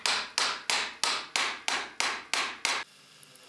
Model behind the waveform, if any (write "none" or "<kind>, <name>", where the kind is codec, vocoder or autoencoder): none